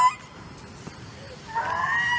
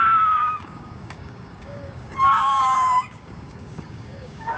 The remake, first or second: second